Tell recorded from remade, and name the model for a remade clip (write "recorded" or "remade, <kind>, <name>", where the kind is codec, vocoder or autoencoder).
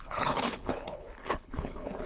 remade, codec, HILCodec